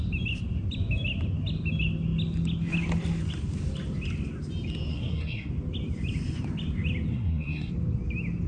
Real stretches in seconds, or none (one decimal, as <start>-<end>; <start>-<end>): 0.0-4.9; 5.5-7.1; 7.7-8.5